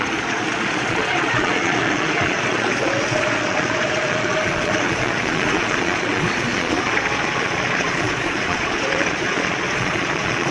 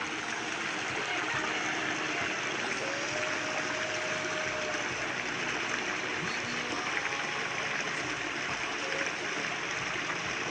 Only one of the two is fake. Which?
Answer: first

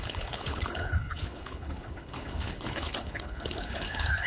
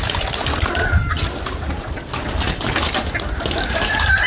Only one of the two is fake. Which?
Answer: first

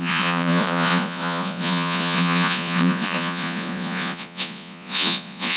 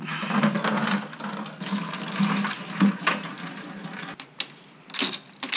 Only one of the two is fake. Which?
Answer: first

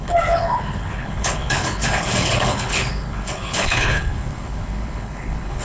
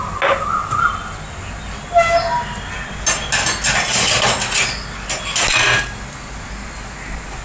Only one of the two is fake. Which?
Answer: first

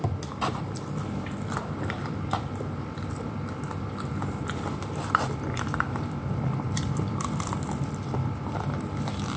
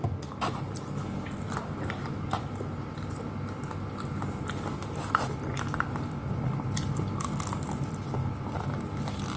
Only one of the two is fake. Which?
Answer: first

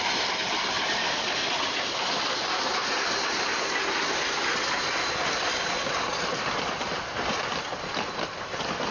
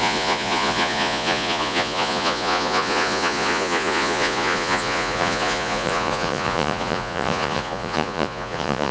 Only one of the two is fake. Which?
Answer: second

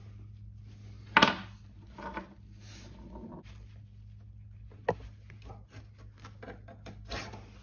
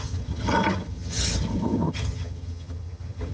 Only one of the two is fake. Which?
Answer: second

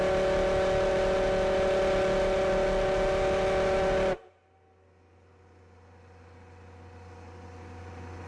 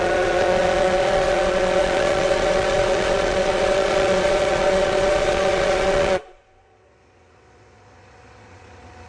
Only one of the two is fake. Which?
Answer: second